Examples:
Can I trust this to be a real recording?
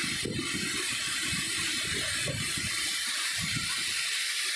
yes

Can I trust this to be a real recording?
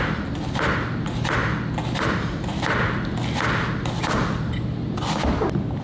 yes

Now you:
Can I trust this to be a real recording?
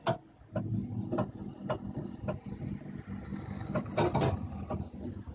yes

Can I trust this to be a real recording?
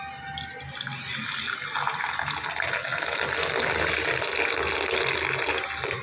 yes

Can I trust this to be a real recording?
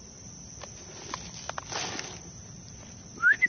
yes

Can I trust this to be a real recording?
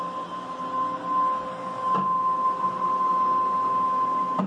yes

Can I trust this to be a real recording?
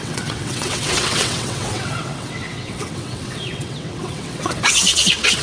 no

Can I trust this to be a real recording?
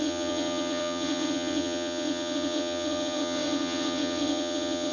no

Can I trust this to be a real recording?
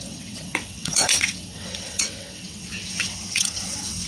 no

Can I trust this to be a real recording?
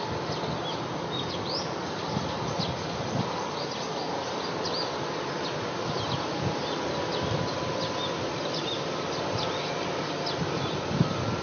yes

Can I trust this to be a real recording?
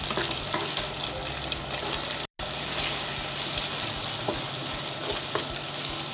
yes